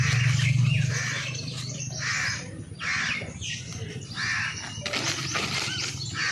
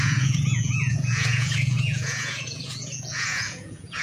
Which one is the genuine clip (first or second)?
first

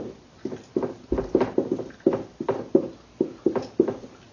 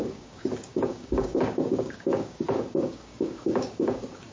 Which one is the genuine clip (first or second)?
first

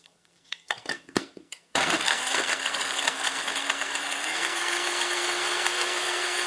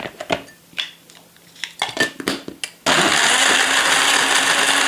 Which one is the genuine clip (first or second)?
second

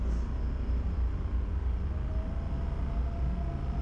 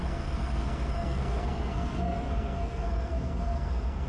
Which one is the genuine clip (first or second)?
first